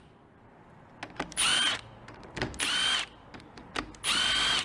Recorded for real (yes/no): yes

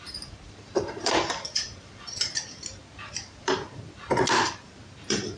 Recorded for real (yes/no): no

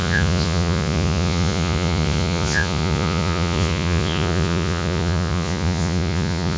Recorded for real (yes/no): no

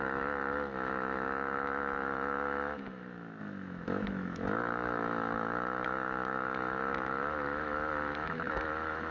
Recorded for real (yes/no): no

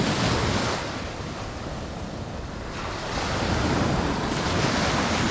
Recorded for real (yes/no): yes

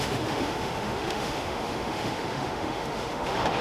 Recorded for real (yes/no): no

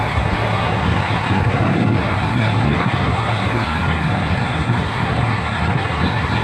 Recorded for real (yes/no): no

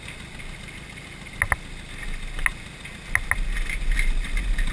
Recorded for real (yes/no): yes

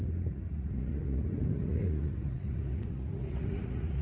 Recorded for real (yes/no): no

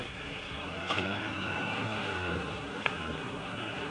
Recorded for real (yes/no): no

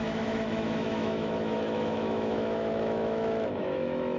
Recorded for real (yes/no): no